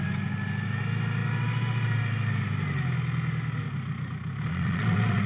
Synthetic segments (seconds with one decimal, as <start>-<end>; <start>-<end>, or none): 4.5-5.3